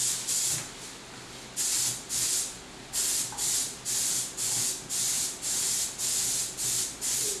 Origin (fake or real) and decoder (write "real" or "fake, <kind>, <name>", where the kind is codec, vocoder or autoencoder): real